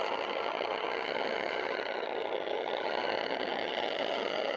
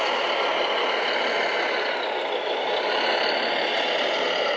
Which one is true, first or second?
second